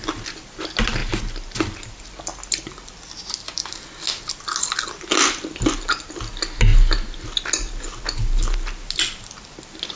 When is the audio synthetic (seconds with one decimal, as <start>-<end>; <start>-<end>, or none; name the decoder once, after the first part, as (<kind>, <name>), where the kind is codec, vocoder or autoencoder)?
none